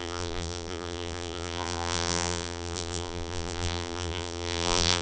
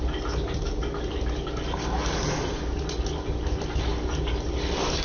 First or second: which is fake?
first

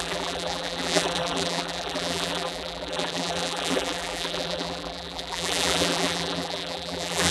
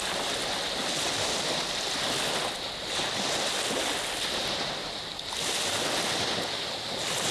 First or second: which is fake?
first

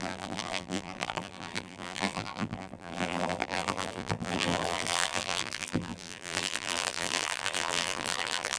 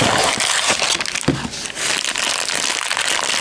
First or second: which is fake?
first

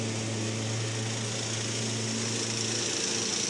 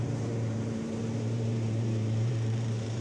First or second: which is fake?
second